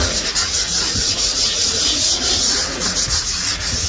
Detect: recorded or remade remade